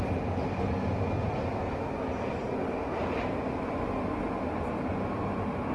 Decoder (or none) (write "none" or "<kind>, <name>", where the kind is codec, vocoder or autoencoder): none